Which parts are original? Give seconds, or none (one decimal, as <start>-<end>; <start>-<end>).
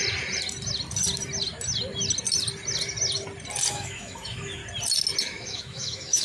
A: 0.0-3.7; 4.6-5.2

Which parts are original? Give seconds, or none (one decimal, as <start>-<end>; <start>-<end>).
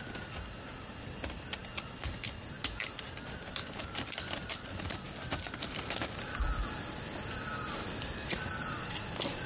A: 0.0-9.5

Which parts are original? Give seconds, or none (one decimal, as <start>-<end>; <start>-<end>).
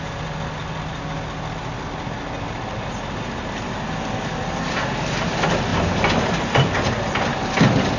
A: 0.0-8.0